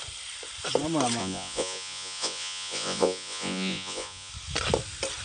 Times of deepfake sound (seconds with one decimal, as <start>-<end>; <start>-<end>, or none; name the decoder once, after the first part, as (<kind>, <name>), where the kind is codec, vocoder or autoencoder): 1.2-4.3 (vocoder, Vocos)